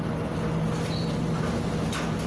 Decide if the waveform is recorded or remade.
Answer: recorded